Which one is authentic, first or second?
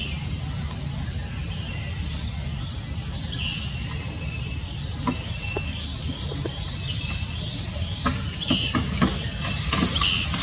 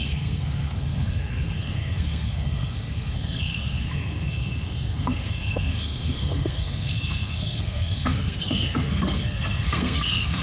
first